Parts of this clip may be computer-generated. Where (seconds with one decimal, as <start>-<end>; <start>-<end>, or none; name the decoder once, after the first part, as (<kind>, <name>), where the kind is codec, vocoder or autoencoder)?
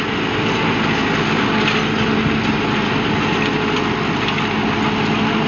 none